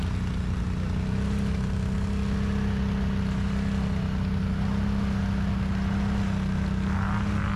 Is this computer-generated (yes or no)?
no